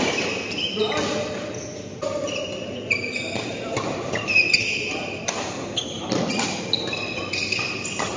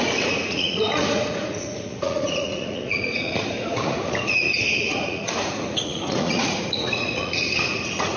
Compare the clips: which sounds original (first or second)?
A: first